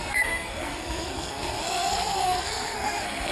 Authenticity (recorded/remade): remade